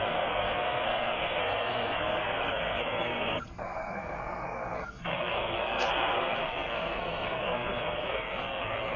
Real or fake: fake